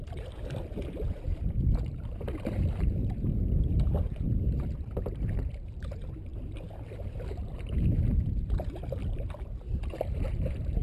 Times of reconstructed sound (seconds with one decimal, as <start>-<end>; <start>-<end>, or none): 0.0-10.8